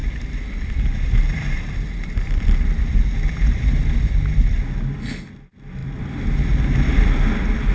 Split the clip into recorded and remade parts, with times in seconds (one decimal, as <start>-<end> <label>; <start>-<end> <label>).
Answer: 0.0-4.5 remade; 4.5-5.8 recorded; 5.8-6.9 remade; 6.9-7.7 recorded